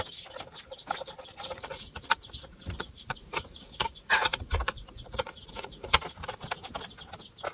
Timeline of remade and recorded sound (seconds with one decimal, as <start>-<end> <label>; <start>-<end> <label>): 0.0-1.5 recorded; 1.5-6.0 remade; 6.0-7.5 recorded